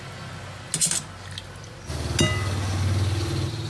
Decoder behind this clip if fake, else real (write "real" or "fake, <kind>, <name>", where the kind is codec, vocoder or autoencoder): real